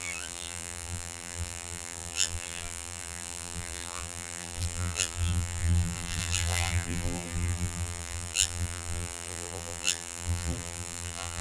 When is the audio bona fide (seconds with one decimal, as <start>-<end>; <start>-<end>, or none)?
none